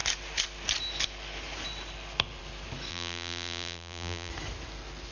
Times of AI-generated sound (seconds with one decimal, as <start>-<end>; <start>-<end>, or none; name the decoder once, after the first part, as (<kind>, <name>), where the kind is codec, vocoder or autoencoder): 2.9-4.3 (vocoder, BigVGAN v2)